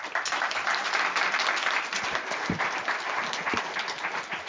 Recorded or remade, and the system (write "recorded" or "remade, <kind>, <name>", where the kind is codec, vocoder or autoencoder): recorded